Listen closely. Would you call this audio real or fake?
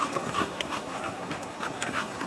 fake